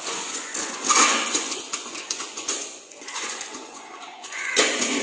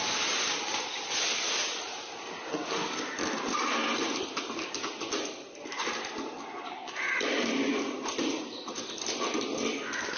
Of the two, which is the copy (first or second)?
first